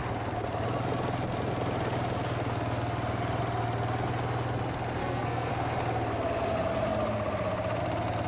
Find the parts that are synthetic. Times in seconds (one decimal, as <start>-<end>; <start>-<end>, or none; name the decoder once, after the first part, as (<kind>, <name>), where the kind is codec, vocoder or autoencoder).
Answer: 5.0-5.5 (codec, SNAC)